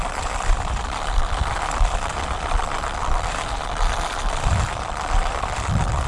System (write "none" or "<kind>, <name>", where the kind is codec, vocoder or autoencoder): vocoder, BigVGAN v2